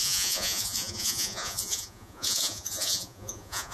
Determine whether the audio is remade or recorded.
remade